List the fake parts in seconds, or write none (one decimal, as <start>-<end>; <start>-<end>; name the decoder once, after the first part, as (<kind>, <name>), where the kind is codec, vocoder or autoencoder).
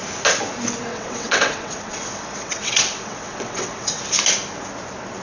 0.9-4.0 (vocoder, WaveNeXt)